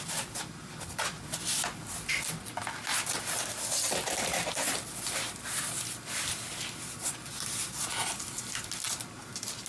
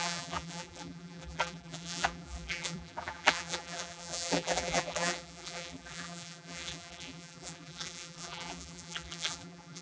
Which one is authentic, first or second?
first